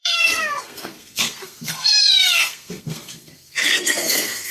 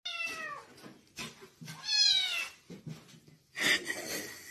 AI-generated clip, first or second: first